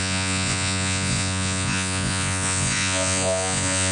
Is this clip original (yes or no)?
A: no